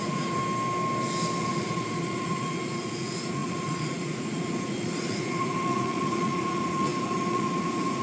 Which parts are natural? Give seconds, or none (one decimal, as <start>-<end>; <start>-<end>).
0.4-1.4